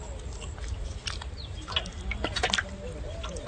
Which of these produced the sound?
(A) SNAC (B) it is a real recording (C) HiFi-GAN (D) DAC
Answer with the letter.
B